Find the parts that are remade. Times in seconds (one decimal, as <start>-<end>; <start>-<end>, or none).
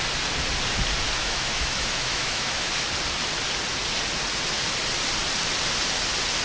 1.2-2.7